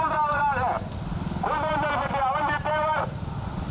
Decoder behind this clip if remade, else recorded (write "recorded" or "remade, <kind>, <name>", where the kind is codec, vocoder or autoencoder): recorded